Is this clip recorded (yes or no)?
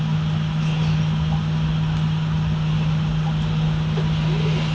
yes